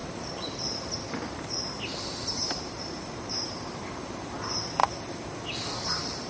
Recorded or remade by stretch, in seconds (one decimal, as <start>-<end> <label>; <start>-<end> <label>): 0.0-4.8 remade; 4.8-5.8 recorded; 5.8-6.3 remade